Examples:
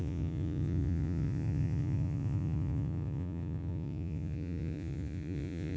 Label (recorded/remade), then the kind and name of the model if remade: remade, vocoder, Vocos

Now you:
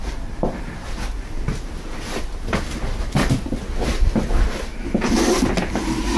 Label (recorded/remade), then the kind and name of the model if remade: recorded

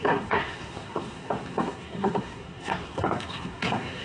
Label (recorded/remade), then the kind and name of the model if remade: remade, codec, SNAC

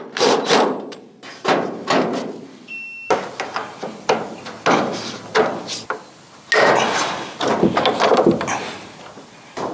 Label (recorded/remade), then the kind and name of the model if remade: recorded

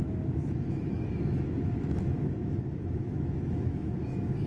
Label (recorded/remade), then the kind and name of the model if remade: remade, autoencoder, DAC-VAE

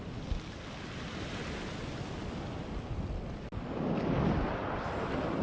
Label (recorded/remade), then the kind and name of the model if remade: recorded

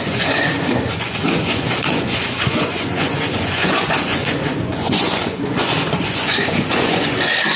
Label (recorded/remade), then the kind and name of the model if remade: remade, vocoder, Vocos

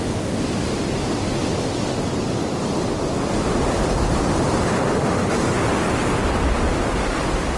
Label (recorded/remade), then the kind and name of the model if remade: recorded